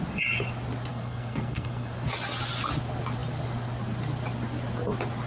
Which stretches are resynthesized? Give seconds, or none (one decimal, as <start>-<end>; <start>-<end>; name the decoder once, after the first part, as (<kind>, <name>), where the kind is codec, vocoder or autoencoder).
0.9-1.9 (codec, SNAC)